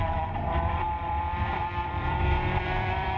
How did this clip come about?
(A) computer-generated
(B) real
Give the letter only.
A